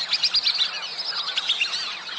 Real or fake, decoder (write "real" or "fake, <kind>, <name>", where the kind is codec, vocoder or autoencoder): real